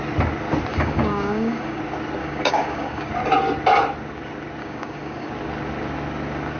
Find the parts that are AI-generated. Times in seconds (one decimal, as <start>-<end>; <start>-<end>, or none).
0.7-1.8; 2.2-3.1; 4.6-5.3